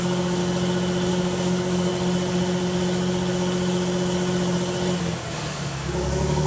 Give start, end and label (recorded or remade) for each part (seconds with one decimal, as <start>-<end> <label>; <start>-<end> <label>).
0.0-0.4 remade; 0.4-1.1 recorded; 1.1-1.9 remade; 1.9-5.0 recorded; 5.0-6.5 remade